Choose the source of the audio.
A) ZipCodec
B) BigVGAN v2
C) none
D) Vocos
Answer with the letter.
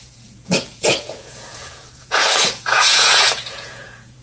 D